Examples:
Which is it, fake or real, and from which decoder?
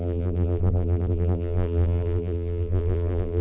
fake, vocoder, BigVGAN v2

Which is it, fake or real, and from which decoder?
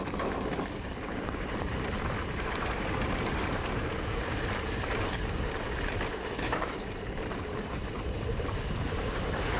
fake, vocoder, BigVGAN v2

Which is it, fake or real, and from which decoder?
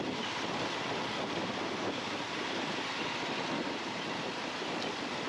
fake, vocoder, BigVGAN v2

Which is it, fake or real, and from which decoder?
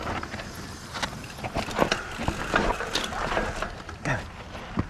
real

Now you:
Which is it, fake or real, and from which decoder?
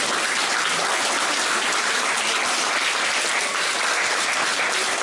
fake, vocoder, BigVGAN v2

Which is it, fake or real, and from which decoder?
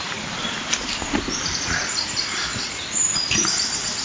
fake, vocoder, BigVGAN v2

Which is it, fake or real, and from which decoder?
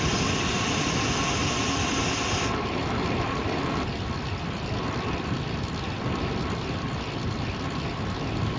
real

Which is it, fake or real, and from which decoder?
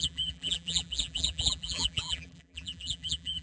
fake, vocoder, BigVGAN v2